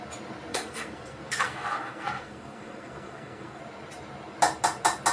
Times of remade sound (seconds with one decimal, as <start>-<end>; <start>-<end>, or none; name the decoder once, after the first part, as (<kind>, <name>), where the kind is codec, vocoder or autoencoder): 0.5-3.6 (codec, SNAC)